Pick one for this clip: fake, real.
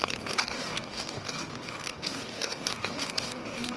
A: fake